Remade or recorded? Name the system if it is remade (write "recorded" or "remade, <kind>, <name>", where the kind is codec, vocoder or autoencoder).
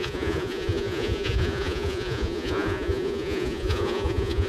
remade, vocoder, Vocos